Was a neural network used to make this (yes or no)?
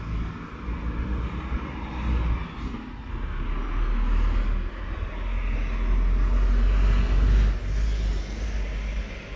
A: no